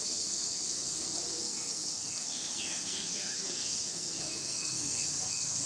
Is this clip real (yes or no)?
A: no